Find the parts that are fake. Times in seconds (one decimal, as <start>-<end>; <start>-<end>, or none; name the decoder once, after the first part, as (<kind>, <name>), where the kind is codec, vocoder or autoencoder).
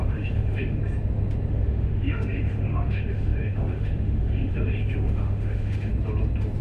0.0-0.8 (autoencoder, DAC-VAE); 1.5-5.9